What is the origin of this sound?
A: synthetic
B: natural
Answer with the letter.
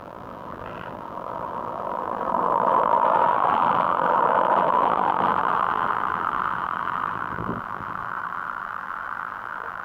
A